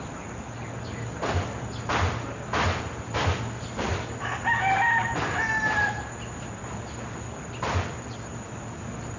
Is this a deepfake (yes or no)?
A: no